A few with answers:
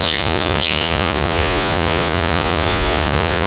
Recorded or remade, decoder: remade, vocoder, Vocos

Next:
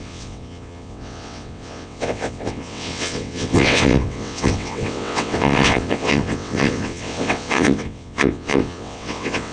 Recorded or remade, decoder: remade, vocoder, WaveNeXt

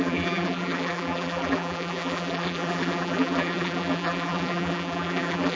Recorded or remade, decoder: remade, vocoder, BigVGAN v2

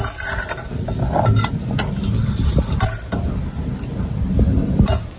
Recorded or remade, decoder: recorded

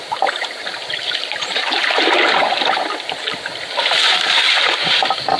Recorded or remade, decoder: remade, vocoder, BigVGAN v2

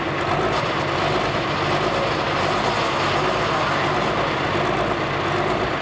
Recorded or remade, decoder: recorded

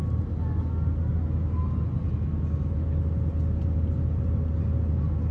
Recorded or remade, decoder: recorded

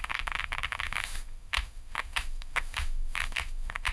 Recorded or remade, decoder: remade, autoencoder, DAC-VAE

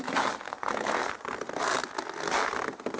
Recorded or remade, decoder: recorded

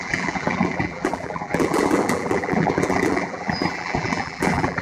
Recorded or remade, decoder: remade, vocoder, BigVGAN v2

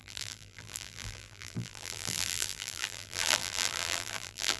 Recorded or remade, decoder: remade, vocoder, BigVGAN v2